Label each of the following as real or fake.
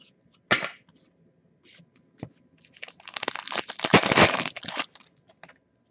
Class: real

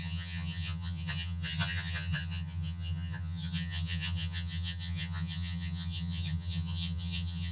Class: fake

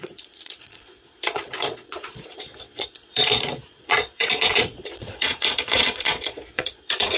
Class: fake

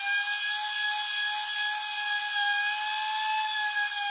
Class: real